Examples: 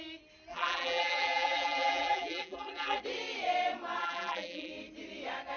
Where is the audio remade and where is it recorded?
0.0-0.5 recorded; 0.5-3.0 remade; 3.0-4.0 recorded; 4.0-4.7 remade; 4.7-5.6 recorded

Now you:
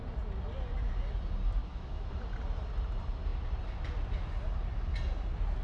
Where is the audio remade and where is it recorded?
0.0-1.6 recorded; 1.6-2.1 remade; 2.1-5.6 recorded

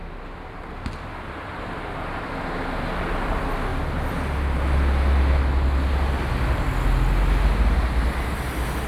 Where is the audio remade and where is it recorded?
0.0-8.9 recorded

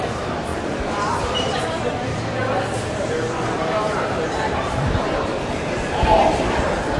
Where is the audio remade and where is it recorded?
0.0-0.5 recorded; 0.5-1.9 remade; 1.9-2.4 recorded; 2.4-6.6 remade; 6.6-7.0 recorded